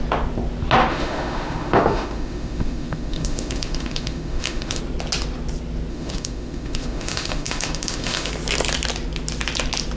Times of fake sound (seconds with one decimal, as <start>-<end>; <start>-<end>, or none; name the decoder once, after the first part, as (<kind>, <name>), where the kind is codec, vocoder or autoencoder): 0.9-4.8 (autoencoder, DAC-VAE); 5.9-8.3

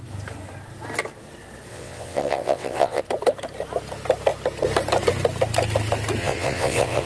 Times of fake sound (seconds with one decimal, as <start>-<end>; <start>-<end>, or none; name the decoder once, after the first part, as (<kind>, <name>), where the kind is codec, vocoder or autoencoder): 1.7-3.0 (vocoder, WaveNeXt); 6.2-7.1

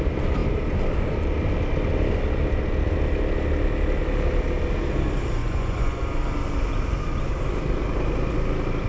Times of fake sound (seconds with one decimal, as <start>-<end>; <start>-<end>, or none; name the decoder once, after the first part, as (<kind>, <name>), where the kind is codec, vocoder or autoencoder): 5.4-6.0 (vocoder, Vocos)

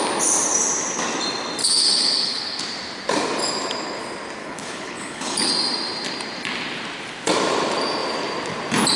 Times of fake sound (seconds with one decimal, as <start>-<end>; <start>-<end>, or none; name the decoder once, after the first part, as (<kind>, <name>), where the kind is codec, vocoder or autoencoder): 1.6-2.6 (codec, HILCodec); 4.4-5.5

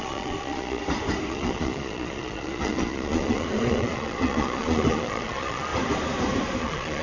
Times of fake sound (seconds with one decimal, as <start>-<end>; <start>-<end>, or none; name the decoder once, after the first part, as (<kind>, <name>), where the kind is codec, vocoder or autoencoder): 0.0-0.8 (vocoder, Vocos); 1.3-5.7; 6.6-7.0